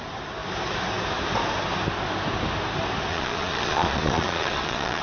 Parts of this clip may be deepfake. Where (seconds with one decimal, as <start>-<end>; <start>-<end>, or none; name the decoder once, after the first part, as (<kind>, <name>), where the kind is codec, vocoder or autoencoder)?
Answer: 3.1-5.0 (vocoder, Vocos)